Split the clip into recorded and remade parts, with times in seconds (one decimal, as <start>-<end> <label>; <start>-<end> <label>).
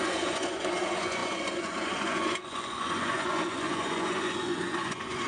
0.0-5.3 remade